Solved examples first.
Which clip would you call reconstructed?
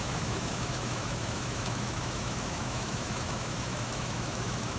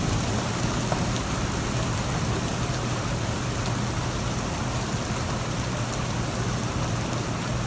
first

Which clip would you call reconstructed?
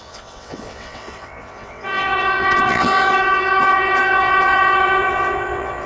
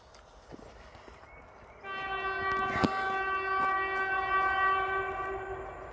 first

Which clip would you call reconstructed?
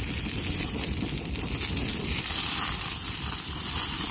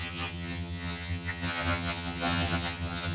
second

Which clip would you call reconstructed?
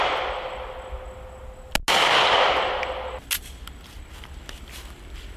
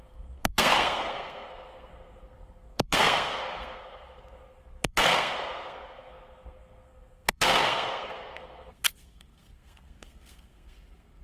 second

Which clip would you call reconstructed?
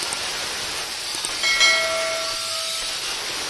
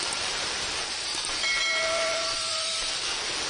second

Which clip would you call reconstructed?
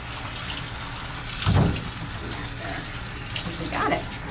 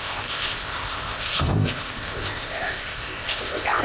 second